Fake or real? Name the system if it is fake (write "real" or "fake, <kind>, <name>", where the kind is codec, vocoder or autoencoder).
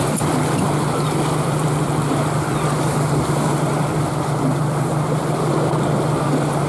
real